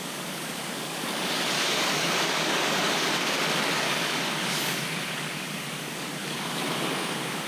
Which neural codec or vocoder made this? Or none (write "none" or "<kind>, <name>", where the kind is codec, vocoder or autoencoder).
codec, DAC